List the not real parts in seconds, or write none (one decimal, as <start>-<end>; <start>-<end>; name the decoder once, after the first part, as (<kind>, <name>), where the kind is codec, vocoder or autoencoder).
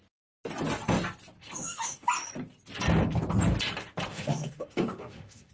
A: 1.4-2.1 (autoencoder, DAC-VAE); 4.1-5.5